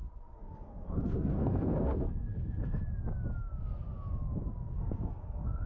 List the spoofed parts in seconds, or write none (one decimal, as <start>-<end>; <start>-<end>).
0.0-2.8; 4.7-5.7